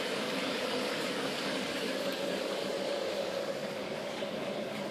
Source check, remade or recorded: remade